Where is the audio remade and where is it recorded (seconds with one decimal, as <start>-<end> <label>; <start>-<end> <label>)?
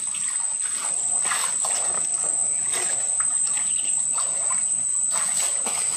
0.0-6.0 recorded